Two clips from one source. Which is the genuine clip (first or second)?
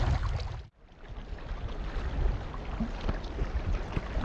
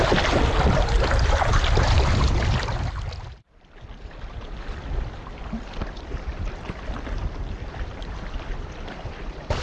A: first